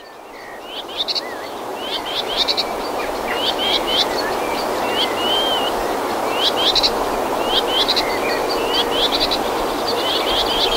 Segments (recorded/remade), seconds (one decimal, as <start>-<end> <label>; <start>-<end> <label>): 0.0-1.7 recorded; 1.7-4.2 remade; 4.2-10.8 recorded